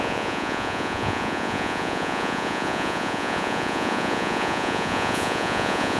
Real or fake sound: fake